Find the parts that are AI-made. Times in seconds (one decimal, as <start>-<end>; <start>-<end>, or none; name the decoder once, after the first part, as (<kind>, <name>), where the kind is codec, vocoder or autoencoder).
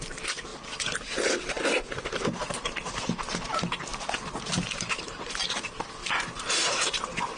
3.9-5.4 (vocoder, BigVGAN v2)